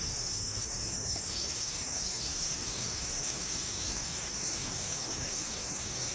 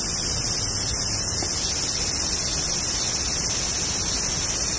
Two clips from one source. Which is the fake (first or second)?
first